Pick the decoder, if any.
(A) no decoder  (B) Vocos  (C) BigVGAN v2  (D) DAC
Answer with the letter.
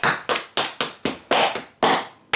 A